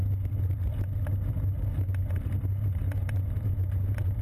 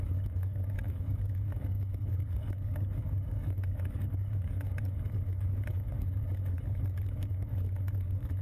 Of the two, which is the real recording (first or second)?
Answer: first